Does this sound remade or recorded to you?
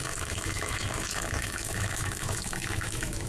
remade